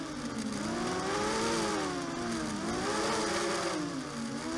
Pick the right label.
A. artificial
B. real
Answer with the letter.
B